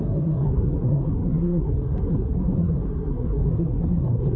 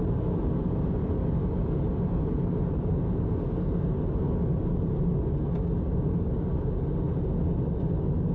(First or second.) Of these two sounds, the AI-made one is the first